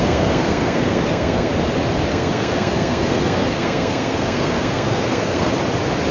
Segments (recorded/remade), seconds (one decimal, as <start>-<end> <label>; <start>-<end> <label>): 0.0-1.5 remade; 1.5-2.1 recorded; 2.1-5.5 remade; 5.5-6.1 recorded